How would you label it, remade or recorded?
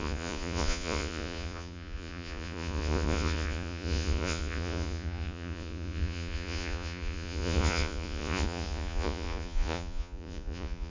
remade